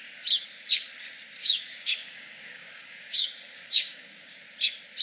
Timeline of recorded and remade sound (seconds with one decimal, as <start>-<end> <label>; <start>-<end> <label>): 0.0-1.4 recorded; 1.4-4.4 remade; 4.4-5.0 recorded